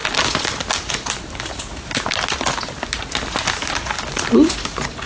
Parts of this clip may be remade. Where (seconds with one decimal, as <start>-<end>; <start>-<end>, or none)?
none